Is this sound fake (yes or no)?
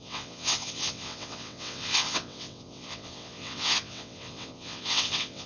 yes